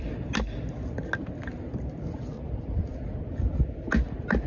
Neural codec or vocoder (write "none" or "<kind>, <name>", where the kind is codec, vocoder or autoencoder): none